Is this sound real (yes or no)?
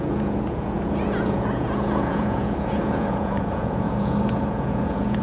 no